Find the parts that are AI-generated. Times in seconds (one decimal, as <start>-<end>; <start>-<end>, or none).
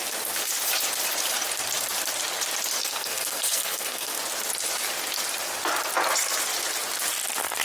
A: 2.8-4.2